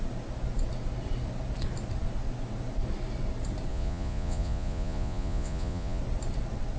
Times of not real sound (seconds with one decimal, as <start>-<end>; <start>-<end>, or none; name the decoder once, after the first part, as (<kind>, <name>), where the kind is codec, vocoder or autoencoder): 3.7-6.0 (vocoder, Vocos)